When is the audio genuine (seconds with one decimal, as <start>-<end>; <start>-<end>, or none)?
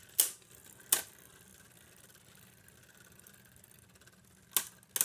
0.0-5.0